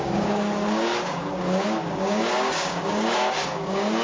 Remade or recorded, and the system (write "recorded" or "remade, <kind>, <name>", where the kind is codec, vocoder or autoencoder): remade, codec, DAC